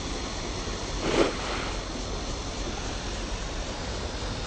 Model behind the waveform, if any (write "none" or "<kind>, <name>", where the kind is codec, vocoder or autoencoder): none